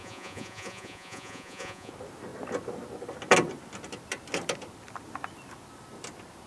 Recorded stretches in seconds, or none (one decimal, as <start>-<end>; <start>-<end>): 1.9-6.5